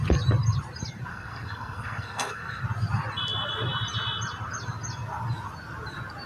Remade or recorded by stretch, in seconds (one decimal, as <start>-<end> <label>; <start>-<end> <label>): 0.0-1.1 recorded; 1.1-2.6 remade; 2.6-6.3 recorded